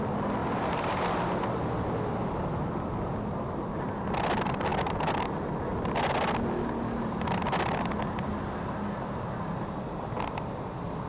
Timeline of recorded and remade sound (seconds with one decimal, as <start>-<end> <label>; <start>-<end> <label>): 0.0-0.4 recorded; 0.4-1.0 remade; 1.0-11.1 recorded